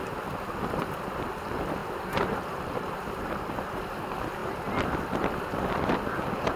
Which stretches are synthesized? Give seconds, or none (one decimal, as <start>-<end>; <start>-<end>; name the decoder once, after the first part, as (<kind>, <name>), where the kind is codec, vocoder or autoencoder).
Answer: none